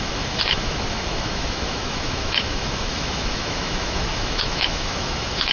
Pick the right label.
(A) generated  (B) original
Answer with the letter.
A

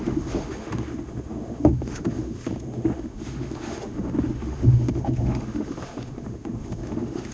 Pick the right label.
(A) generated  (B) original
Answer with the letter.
A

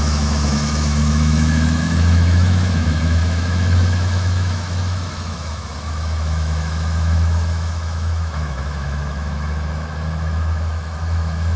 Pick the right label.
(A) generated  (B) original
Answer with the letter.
A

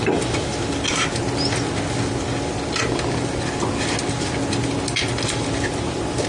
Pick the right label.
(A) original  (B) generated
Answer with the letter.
A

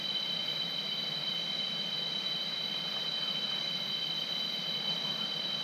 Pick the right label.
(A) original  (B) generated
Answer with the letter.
A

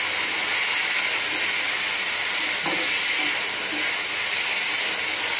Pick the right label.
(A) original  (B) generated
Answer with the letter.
A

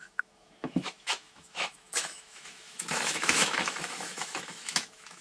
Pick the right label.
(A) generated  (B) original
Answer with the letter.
A